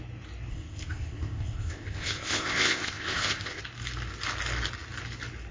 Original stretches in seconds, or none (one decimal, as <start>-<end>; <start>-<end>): 0.0-0.5; 3.6-5.5

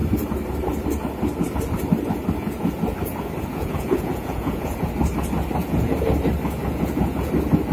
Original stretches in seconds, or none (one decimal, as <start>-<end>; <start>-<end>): 0.0-3.5; 4.9-5.6; 6.1-6.6; 7.3-7.7

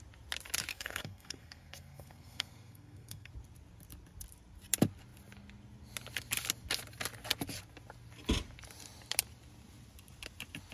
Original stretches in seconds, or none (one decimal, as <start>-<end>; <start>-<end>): 0.0-0.7; 3.3-10.7

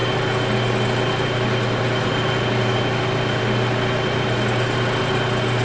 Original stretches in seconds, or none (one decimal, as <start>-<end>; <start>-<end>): 0.0-5.6

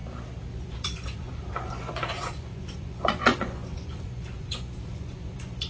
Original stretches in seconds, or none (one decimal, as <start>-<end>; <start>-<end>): 0.0-0.5

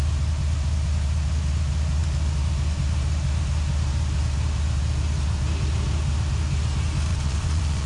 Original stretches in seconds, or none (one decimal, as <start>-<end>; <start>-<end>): 0.0-7.1